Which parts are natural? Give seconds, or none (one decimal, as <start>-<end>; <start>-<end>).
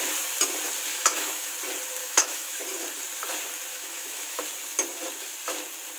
0.0-0.9; 1.5-2.0; 2.6-3.7; 4.4-6.0